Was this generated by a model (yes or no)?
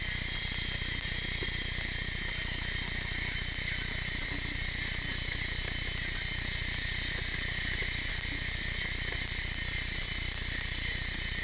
no